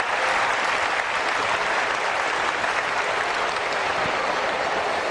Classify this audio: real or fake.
real